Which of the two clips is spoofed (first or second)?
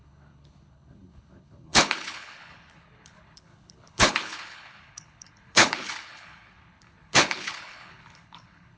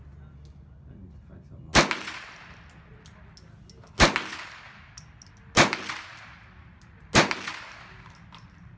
first